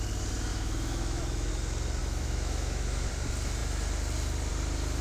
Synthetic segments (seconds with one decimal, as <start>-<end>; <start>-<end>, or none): 0.5-1.5; 2.0-3.1